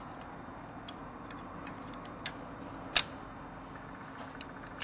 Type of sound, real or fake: real